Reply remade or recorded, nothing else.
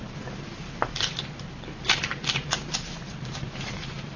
remade